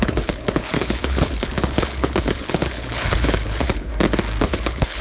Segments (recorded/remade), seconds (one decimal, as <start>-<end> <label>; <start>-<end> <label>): 0.0-3.9 remade; 3.9-4.4 recorded; 4.4-5.0 remade